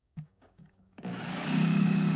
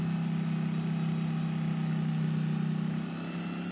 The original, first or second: second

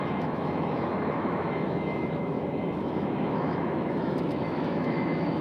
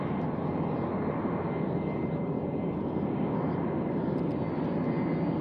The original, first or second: second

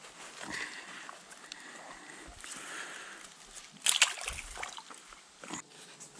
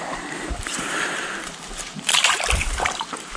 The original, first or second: first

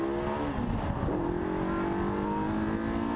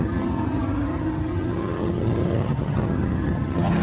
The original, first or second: first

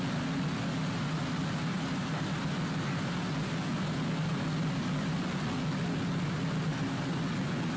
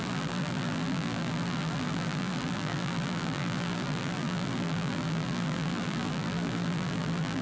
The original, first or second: first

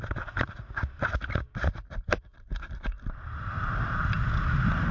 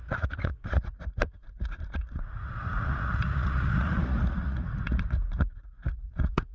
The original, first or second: first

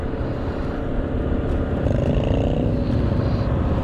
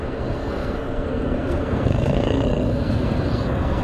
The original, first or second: first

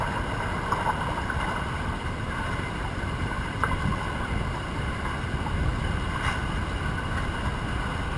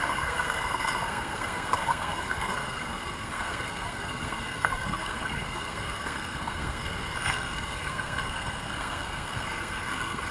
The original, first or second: first